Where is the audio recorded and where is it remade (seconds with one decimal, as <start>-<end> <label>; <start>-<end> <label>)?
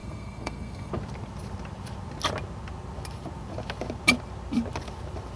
0.0-0.9 remade; 0.9-5.4 recorded